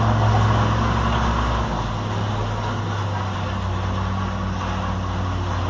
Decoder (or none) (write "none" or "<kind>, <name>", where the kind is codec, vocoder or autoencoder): none